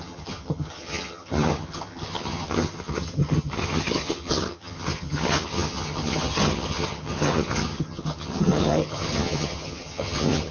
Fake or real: fake